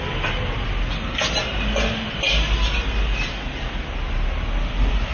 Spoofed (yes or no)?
no